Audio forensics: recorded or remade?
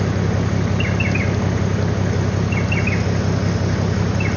recorded